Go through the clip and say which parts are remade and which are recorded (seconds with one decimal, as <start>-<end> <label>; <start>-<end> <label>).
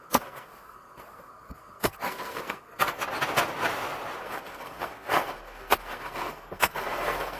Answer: 0.0-3.0 remade; 3.0-4.2 recorded; 4.2-7.4 remade